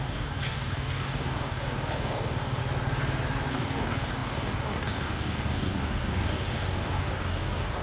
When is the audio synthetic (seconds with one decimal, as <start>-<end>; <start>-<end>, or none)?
0.0-2.6; 3.5-7.8